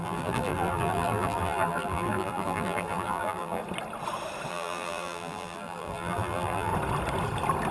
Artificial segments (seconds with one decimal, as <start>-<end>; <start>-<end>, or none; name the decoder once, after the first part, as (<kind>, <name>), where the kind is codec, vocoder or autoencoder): 0.0-3.6 (vocoder, BigVGAN v2); 4.5-6.7